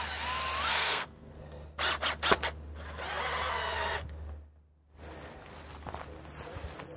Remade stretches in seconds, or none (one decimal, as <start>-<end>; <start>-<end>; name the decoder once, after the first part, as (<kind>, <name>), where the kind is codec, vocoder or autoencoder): 0.7-1.3 (codec, SNAC)